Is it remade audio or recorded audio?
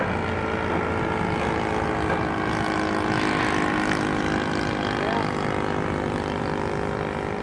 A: recorded